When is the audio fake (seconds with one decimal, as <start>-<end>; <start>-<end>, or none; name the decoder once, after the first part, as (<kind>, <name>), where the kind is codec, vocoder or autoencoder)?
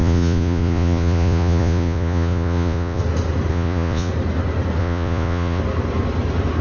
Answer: 0.0-3.0 (vocoder, Vocos); 3.5-4.1; 4.8-5.6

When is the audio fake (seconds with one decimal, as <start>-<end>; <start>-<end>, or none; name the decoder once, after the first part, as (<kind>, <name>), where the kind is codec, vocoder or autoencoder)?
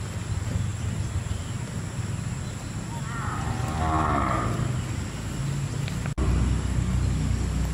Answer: none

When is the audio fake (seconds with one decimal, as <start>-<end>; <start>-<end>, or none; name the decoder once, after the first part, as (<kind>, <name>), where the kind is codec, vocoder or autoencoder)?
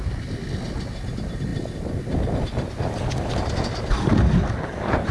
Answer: 0.0-0.4 (vocoder, BigVGAN v2); 1.1-1.5; 4.6-5.1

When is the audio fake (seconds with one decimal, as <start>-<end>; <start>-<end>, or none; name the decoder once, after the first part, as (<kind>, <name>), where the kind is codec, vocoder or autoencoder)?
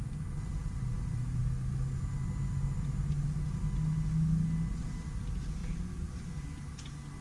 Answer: 5.6-6.3 (vocoder, BigVGAN v2)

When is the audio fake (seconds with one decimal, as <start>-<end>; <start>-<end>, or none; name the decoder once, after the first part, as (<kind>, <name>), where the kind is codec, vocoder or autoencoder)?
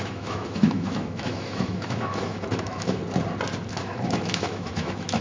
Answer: 0.0-3.0 (autoencoder, DAC-VAE); 3.7-5.2